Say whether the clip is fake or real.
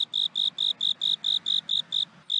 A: real